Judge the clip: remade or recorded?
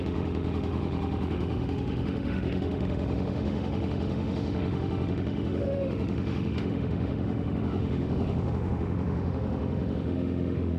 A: remade